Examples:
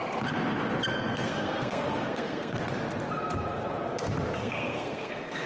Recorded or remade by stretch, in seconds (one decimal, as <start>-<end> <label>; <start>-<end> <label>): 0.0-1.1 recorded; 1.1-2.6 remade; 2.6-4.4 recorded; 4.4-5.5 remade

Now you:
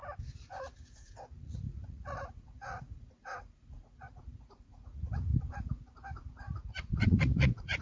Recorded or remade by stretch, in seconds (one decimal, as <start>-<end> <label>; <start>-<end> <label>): 0.0-0.5 recorded; 0.5-5.3 remade; 5.3-6.3 recorded; 6.3-7.8 remade

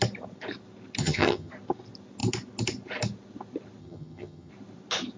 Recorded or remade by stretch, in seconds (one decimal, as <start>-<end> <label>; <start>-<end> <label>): 0.0-1.0 recorded; 1.0-1.5 remade; 1.5-3.8 recorded; 3.8-4.5 remade; 4.5-5.2 recorded

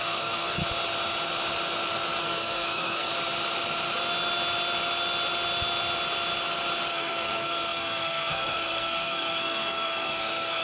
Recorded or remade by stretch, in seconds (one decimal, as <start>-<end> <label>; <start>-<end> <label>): 0.0-0.6 remade; 0.6-2.2 recorded; 2.2-3.1 remade; 3.1-6.9 recorded; 6.9-10.6 remade

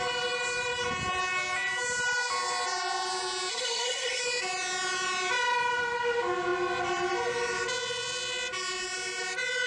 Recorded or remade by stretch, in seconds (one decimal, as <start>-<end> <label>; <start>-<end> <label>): 0.0-3.5 recorded; 3.5-4.2 remade; 4.2-9.7 recorded

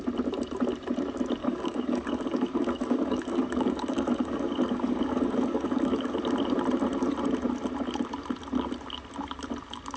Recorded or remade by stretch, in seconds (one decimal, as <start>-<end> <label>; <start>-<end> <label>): 0.0-1.4 recorded; 1.4-6.2 remade; 6.2-10.0 recorded